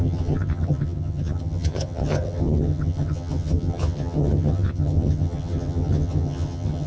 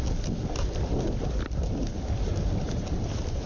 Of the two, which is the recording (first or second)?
second